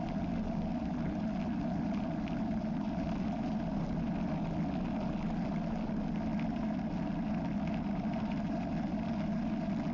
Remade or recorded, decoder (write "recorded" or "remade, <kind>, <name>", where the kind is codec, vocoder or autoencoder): recorded